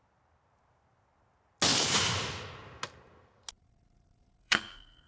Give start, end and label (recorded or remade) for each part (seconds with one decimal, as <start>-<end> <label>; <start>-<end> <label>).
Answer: 0.0-4.4 recorded; 4.4-5.1 remade